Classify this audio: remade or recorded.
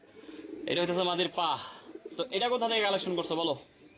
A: recorded